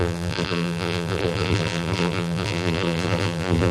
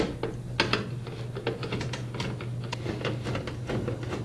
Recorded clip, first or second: second